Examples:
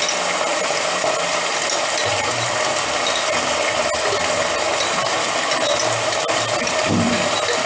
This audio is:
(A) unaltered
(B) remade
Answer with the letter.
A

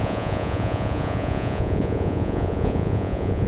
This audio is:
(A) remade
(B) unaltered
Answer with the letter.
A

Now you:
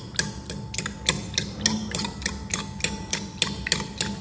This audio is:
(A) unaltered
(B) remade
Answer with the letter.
A